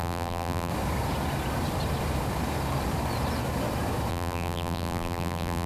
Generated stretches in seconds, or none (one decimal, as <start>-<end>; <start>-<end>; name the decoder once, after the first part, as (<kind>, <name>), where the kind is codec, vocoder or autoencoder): 0.0-0.7 (vocoder, BigVGAN v2); 4.1-5.7